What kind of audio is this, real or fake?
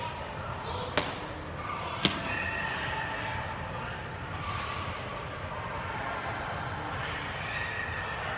real